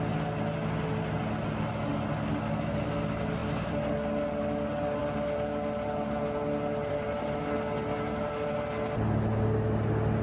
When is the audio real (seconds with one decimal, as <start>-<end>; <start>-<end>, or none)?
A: 0.0-10.2